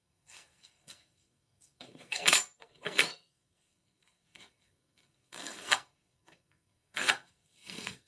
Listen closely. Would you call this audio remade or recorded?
remade